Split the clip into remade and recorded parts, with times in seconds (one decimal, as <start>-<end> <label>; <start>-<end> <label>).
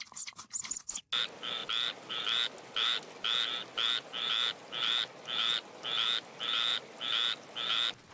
0.0-1.6 recorded; 1.6-2.2 remade; 2.2-8.1 recorded